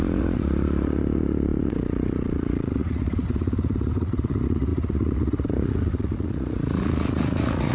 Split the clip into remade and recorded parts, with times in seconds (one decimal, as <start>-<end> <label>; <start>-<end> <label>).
0.0-7.7 remade

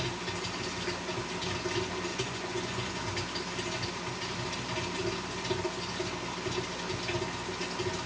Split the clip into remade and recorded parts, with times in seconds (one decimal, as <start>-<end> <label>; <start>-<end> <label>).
0.0-2.1 recorded; 2.1-3.0 remade; 3.0-8.1 recorded

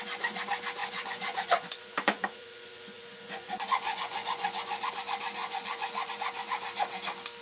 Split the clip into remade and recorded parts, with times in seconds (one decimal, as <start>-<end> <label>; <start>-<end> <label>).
0.0-0.8 recorded; 0.8-4.9 remade; 4.9-5.4 recorded; 5.4-6.1 remade; 6.1-7.4 recorded

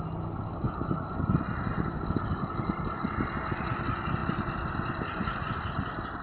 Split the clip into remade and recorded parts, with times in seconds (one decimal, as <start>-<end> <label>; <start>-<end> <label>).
0.0-6.2 recorded

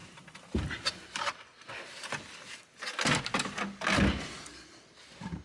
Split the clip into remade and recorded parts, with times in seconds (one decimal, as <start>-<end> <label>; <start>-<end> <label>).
0.0-5.4 recorded

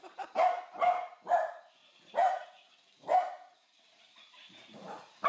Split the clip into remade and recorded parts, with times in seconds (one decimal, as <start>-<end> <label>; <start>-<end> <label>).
0.0-1.8 recorded; 1.8-5.3 remade

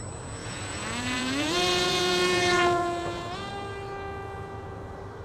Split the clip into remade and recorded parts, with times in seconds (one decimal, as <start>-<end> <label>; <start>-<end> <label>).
0.0-0.4 recorded; 0.4-3.5 remade; 3.5-5.2 recorded

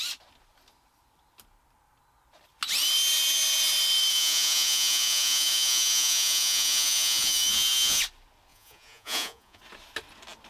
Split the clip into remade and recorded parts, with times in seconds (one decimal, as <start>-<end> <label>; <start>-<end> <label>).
0.0-4.1 recorded; 4.1-8.0 remade; 8.0-8.5 recorded; 8.5-9.6 remade; 9.6-10.5 recorded